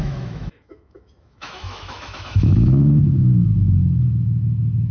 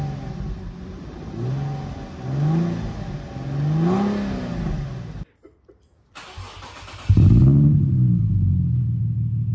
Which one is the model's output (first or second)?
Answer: first